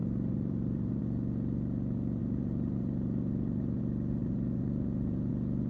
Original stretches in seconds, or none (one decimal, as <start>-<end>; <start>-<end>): 1.0-2.2; 3.8-4.2; 5.3-5.7